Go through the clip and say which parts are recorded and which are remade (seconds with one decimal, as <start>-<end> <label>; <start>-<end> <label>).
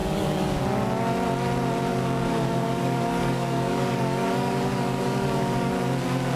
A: 0.0-0.6 remade; 0.6-1.9 recorded; 1.9-5.7 remade; 5.7-6.4 recorded